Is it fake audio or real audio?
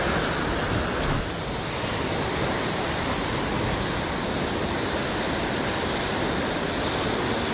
real